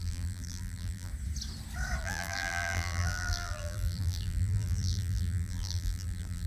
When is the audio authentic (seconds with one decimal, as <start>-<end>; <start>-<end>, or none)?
1.1-2.0